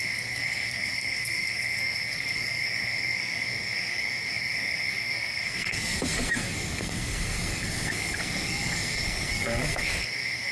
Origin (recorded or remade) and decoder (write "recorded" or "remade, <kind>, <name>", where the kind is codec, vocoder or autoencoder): remade, codec, SNAC